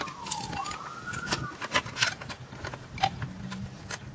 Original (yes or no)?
yes